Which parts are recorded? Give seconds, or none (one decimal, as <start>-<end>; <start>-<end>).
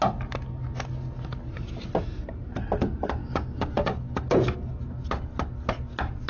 0.0-3.2; 4.1-6.3